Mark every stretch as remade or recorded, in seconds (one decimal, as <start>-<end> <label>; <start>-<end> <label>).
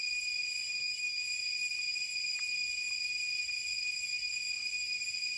0.0-0.6 recorded; 0.6-1.2 remade; 1.2-5.4 recorded